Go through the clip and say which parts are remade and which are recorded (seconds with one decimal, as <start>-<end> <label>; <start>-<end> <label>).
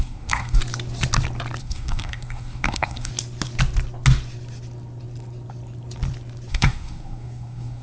0.0-0.6 remade; 0.6-1.6 recorded; 1.6-3.1 remade; 3.1-6.5 recorded; 6.5-7.8 remade